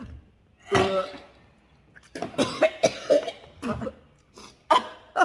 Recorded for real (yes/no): yes